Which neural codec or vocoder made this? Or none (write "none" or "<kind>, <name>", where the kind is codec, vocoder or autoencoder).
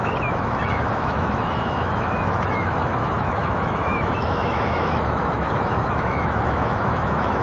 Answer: autoencoder, DAC-VAE